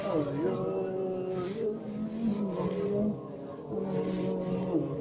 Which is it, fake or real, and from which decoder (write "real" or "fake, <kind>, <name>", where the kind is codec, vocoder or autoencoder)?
real